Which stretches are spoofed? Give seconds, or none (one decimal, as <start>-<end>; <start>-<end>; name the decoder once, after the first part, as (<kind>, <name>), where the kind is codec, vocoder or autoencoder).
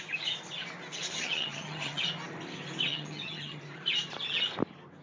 1.1-2.0 (vocoder, HiFi-GAN); 2.9-3.6